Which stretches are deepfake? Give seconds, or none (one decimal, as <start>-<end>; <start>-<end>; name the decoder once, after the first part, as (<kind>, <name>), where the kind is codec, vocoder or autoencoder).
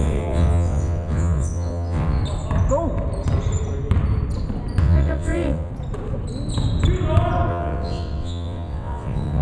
0.0-2.2 (vocoder, WaveNeXt); 4.8-5.7; 7.5-9.4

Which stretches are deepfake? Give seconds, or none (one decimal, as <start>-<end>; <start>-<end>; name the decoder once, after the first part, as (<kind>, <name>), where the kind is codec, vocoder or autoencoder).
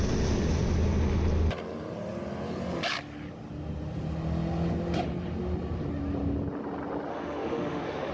7.1-8.1 (autoencoder, DAC-VAE)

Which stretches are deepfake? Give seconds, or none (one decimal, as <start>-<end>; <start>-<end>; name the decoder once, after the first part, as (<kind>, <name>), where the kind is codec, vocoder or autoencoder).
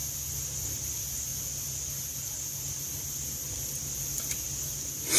none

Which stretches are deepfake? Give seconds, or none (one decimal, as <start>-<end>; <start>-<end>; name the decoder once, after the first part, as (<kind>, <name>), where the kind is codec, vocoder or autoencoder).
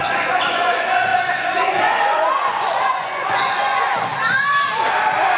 0.0-4.1 (vocoder, Vocos)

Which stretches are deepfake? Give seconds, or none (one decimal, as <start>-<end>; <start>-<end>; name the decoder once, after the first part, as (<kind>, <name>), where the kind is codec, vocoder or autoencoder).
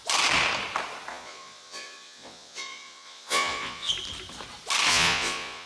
1.1-3.9 (vocoder, Vocos); 4.9-5.7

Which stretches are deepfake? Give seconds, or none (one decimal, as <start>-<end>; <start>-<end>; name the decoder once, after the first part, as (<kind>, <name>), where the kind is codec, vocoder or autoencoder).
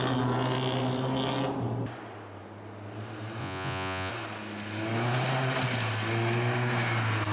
3.4-4.1 (vocoder, Vocos)